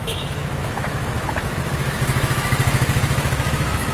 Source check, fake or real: fake